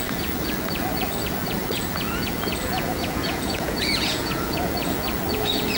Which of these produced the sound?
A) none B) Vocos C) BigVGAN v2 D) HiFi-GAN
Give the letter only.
B